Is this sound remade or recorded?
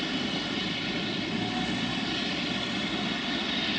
recorded